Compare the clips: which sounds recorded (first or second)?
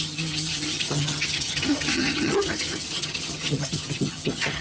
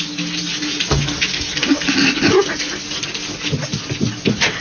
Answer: second